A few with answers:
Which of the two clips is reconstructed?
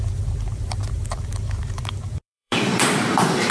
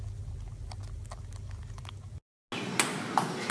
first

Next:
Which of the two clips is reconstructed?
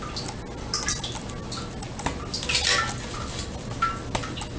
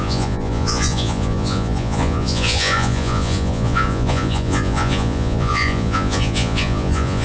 second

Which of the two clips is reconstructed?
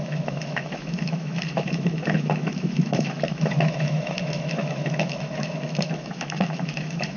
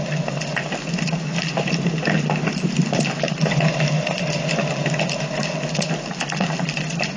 first